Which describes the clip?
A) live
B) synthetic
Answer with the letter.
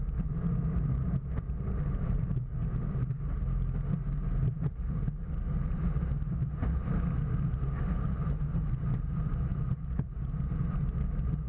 A